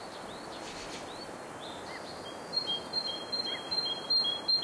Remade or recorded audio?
recorded